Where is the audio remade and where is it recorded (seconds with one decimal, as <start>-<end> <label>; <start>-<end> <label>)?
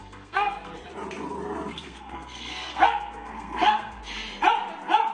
0.0-0.7 remade; 0.7-1.7 recorded; 1.7-4.0 remade; 4.0-5.1 recorded